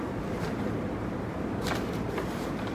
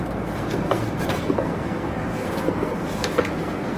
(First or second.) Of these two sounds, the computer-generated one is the second